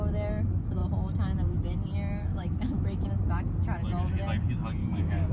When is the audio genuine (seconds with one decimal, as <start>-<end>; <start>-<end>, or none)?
0.0-2.3; 3.1-4.8